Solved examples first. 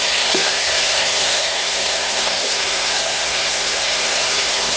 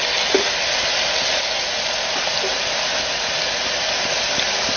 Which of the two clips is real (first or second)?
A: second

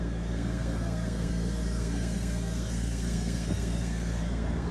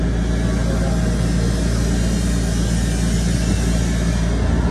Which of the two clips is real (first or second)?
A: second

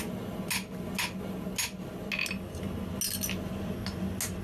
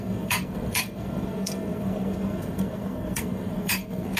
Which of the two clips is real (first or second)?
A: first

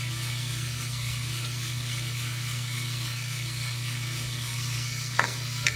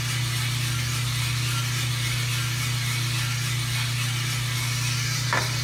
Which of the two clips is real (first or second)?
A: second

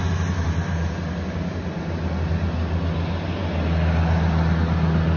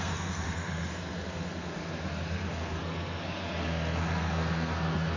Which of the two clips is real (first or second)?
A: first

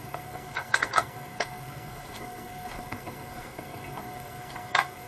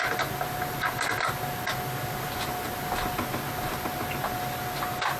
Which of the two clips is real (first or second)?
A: second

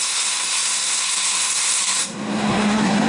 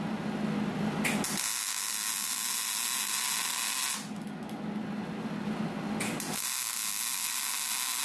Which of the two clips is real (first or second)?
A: second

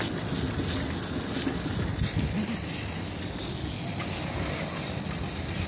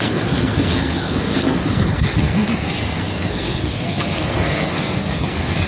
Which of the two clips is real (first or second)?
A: first